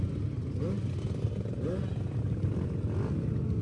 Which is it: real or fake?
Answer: real